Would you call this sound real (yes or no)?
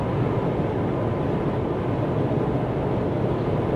yes